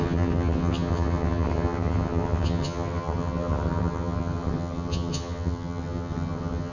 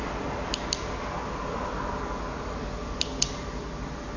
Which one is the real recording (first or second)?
second